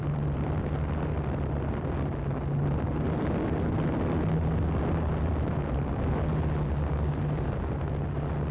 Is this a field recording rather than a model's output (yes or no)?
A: yes